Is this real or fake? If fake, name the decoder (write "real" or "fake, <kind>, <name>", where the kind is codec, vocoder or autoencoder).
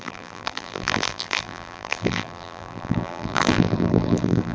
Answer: fake, vocoder, BigVGAN v2